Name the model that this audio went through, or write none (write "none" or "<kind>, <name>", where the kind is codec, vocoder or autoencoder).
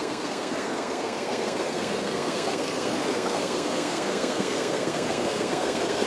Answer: codec, SNAC